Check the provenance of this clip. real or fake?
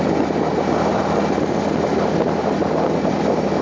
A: real